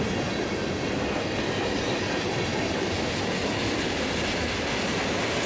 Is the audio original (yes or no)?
yes